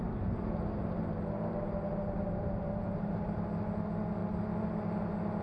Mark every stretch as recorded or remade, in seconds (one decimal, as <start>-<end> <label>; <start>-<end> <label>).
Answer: 0.0-3.2 remade; 3.2-5.4 recorded